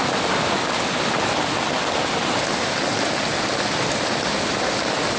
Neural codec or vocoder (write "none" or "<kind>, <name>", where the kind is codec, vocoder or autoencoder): none